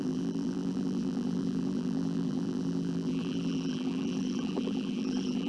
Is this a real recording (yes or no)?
no